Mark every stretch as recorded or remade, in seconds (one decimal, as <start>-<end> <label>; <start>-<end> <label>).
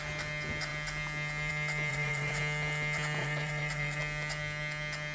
0.0-1.9 recorded; 1.9-2.4 remade; 2.4-3.2 recorded; 3.2-4.0 remade; 4.0-5.1 recorded